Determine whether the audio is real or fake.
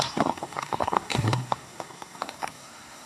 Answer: fake